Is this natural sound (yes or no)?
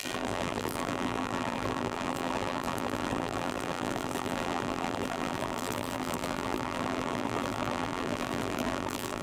no